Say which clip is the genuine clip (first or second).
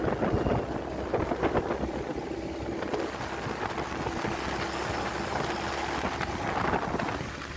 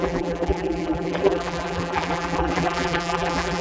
first